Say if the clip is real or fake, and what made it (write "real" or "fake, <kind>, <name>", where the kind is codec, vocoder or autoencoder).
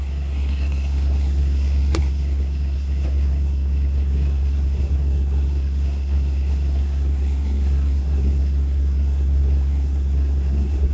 fake, codec, SNAC